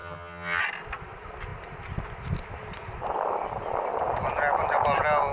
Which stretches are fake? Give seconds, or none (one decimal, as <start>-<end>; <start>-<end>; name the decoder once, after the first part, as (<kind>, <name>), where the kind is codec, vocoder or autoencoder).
0.0-0.6 (vocoder, HiFi-GAN)